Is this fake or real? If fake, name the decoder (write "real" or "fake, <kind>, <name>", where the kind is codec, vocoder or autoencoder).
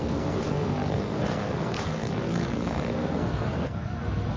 fake, codec, SNAC